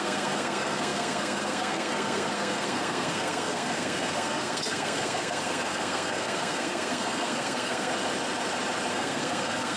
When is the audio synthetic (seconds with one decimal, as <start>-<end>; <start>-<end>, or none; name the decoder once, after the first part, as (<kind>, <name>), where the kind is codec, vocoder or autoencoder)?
0.0-7.9 (codec, SNAC); 8.9-9.8